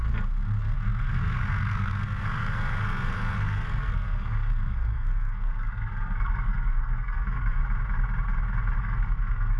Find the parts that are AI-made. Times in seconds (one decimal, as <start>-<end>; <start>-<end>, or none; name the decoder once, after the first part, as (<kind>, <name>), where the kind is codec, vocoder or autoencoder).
0.0-7.6 (codec, SNAC); 8.8-9.6